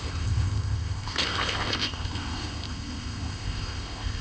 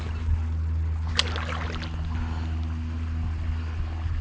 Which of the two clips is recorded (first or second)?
second